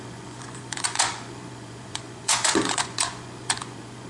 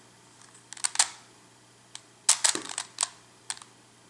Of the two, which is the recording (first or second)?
second